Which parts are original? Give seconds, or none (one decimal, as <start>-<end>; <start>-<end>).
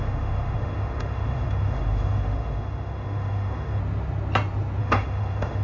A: 3.8-4.8